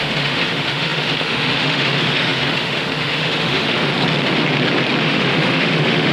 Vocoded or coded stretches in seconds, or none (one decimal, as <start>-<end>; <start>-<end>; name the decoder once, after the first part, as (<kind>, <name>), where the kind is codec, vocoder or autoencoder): 0.0-3.9 (autoencoder, DAC-VAE); 5.0-6.1

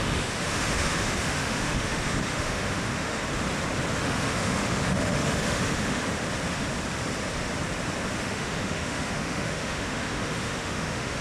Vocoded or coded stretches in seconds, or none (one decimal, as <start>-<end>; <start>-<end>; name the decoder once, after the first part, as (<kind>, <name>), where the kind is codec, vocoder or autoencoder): 0.0-3.2 (autoencoder, DAC-VAE); 4.0-6.0; 8.2-11.2

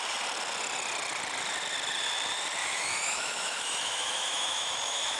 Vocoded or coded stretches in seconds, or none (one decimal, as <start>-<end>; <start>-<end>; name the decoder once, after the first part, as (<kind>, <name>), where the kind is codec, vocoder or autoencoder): 2.6-5.2 (autoencoder, DAC-VAE)